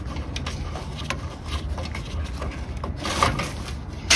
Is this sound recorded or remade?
recorded